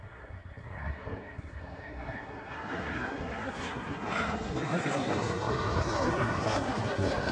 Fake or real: fake